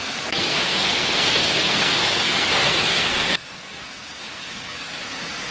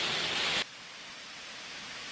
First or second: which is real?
second